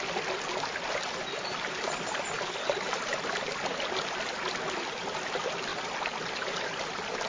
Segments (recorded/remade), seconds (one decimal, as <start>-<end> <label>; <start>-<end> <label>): 0.0-7.3 recorded

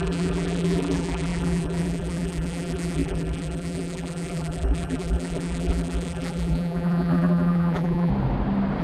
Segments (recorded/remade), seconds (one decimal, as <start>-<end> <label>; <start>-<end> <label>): 0.0-8.1 remade; 8.1-8.8 recorded